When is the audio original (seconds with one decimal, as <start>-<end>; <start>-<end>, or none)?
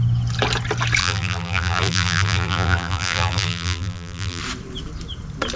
0.0-1.0; 4.4-5.6